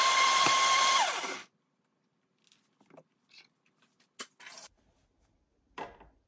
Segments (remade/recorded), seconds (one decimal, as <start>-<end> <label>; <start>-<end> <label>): 0.0-6.3 recorded